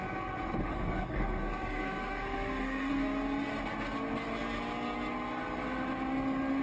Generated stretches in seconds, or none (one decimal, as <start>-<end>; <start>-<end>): 0.7-2.9